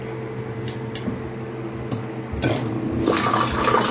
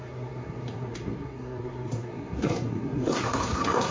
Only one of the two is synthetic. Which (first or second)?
second